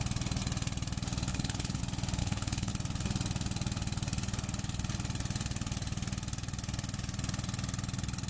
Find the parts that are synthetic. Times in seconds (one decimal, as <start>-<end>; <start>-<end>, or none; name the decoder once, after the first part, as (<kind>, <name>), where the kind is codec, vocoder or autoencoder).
1.3-1.8 (codec, HILCodec); 2.2-2.7

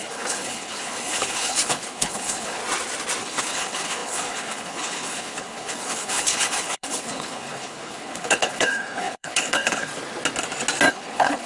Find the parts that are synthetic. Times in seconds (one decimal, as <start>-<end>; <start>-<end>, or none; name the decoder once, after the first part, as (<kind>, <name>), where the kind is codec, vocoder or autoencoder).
0.0-2.6 (codec, HILCodec); 3.2-9.9; 10.9-11.5

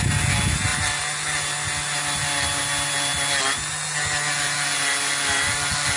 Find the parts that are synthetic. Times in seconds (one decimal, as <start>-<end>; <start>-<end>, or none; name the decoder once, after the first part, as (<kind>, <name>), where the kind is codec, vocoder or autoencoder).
none

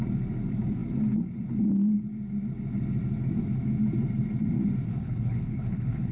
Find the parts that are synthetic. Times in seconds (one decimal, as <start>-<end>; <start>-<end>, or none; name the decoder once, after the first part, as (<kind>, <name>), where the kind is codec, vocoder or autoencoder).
4.9-6.1 (codec, HILCodec)

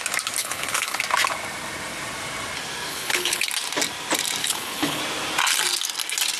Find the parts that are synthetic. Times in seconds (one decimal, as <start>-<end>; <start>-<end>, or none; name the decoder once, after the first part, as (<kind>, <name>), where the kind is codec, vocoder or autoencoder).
0.4-1.0 (codec, HILCodec); 2.9-3.5; 4.4-5.0

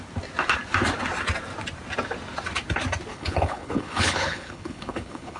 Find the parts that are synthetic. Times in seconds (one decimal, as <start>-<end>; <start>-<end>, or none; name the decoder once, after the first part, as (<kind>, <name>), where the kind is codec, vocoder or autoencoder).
3.1-5.4 (codec, HILCodec)

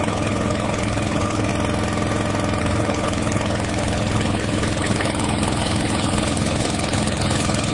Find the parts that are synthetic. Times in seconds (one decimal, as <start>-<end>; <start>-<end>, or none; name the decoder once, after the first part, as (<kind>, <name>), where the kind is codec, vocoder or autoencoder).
0.0-1.5 (codec, HILCodec); 2.6-7.7